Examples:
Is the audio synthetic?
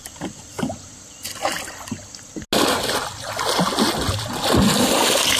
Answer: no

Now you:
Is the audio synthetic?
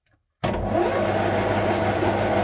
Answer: no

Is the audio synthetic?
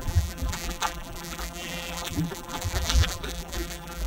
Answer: yes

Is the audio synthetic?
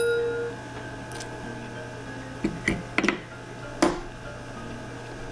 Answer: no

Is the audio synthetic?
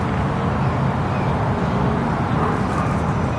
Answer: no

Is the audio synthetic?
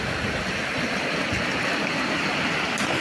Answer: no